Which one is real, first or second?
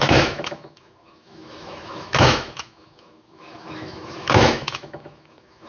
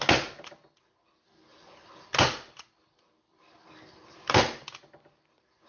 second